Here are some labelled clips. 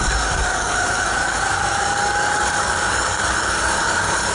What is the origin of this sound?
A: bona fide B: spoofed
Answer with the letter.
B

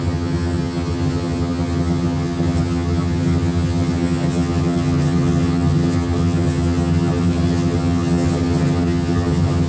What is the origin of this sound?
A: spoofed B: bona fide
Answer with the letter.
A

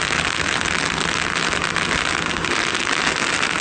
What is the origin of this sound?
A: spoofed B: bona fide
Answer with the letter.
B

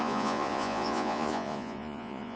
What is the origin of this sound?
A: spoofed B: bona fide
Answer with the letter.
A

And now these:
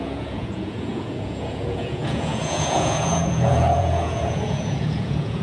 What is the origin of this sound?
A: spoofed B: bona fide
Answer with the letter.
A